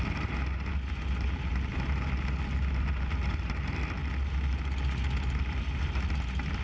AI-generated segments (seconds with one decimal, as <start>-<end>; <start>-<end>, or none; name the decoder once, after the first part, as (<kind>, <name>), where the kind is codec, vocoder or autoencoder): none